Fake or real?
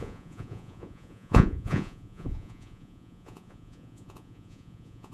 fake